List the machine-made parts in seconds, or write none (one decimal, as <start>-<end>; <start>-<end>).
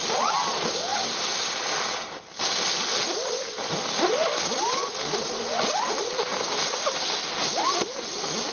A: none